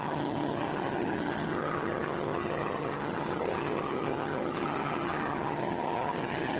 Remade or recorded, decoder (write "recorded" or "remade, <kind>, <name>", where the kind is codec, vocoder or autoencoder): remade, vocoder, HiFi-GAN